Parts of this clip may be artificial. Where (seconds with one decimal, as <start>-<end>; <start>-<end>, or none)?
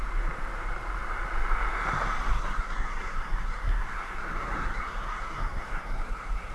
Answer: 2.3-6.5